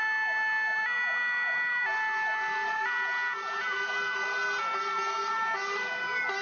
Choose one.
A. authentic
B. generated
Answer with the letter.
A